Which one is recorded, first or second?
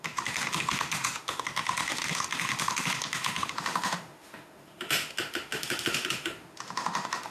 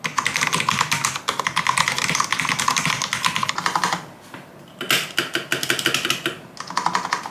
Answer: second